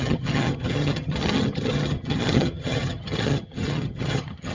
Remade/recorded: remade